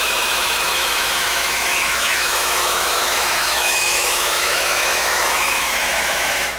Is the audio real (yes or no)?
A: no